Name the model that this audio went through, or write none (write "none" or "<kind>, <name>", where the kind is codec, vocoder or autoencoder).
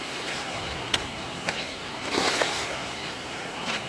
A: codec, SNAC